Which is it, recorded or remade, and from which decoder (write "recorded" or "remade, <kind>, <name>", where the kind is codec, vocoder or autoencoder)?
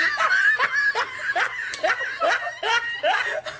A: recorded